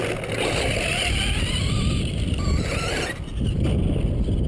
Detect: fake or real real